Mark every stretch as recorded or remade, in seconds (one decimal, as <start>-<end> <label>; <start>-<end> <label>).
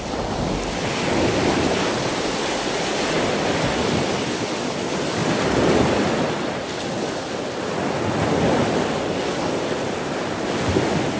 0.0-11.2 recorded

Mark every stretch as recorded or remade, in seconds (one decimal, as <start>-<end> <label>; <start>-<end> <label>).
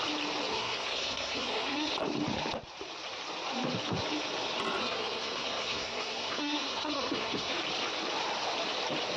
0.0-0.5 recorded; 0.5-1.9 remade; 1.9-4.8 recorded; 4.8-7.5 remade; 7.5-9.2 recorded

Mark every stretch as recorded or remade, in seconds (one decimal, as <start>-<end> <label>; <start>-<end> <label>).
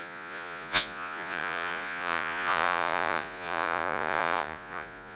0.0-5.2 remade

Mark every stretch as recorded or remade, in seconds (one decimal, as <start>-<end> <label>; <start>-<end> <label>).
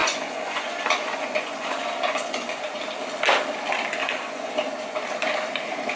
0.0-2.6 remade; 2.6-4.0 recorded; 4.0-4.5 remade; 4.5-6.0 recorded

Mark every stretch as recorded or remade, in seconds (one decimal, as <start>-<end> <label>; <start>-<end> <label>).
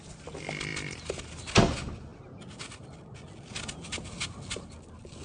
0.0-5.2 recorded